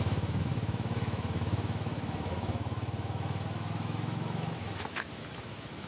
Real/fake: fake